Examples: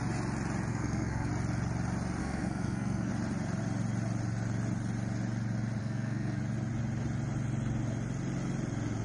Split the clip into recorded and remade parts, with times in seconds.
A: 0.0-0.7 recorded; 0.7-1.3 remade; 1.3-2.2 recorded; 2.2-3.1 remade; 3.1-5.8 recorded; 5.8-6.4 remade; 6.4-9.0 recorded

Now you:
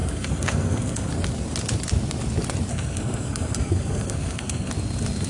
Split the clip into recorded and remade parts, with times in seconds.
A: 0.0-1.1 remade; 1.1-2.7 recorded; 2.7-4.7 remade; 4.7-5.3 recorded

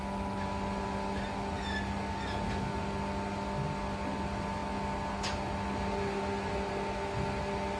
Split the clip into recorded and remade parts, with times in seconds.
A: 0.0-7.8 recorded